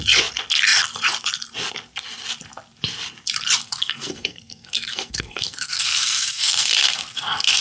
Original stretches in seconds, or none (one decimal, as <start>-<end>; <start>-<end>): 0.0-3.6